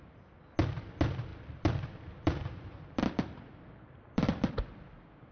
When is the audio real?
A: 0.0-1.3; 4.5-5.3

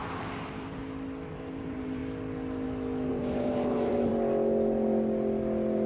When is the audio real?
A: 0.8-1.3; 2.0-3.1; 4.1-5.9

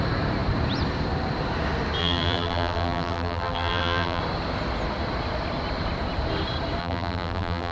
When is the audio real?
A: 0.0-2.0; 4.2-6.8